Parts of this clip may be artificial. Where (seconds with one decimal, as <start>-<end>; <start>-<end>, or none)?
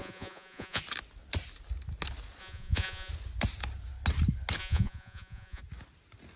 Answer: 0.0-0.8; 2.4-3.1; 4.6-5.6